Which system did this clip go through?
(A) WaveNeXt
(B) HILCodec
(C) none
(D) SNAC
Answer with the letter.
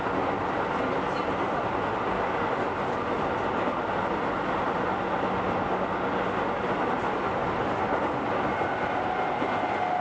C